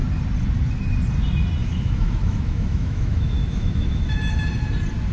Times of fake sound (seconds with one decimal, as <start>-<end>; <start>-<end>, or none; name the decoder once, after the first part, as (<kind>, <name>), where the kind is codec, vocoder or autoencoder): 1.6-4.2 (autoencoder, DAC-VAE)